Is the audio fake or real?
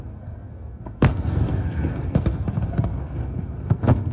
fake